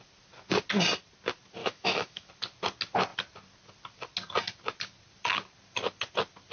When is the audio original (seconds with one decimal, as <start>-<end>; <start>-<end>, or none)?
0.0-1.6; 2.3-6.5